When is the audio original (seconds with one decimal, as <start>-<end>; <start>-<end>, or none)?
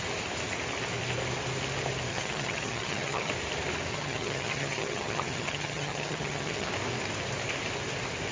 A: 0.0-2.1; 3.3-3.9; 6.7-8.3